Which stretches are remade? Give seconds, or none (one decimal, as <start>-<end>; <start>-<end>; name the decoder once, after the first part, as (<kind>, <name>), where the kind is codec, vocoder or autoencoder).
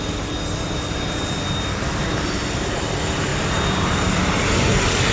none